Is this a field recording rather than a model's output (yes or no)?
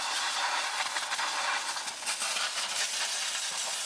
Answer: yes